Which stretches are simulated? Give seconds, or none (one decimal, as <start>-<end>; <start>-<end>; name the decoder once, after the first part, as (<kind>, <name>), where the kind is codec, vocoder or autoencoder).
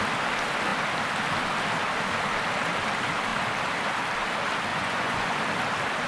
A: 4.7-5.4 (vocoder, Vocos)